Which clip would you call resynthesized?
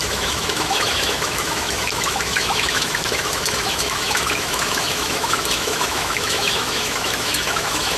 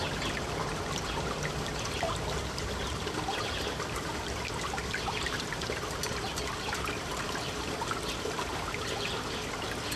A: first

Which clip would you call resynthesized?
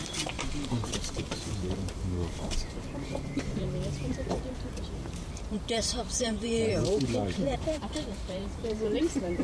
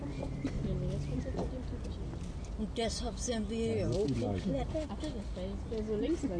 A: first